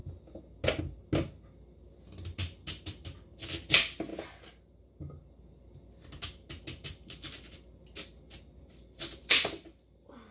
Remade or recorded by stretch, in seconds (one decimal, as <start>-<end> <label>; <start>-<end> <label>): 0.0-10.3 recorded